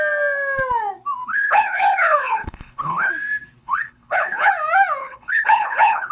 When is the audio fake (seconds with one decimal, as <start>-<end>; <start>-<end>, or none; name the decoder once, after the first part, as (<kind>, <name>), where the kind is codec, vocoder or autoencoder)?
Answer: 1.3-3.1 (codec, HILCodec); 3.6-4.5; 5.0-6.1